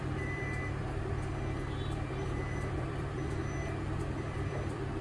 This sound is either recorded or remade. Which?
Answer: remade